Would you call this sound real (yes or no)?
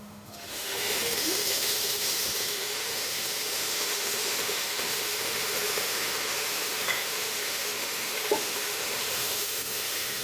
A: no